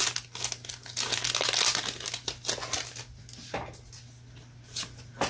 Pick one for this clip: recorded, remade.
recorded